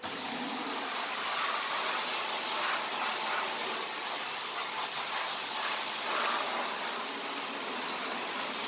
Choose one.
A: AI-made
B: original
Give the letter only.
B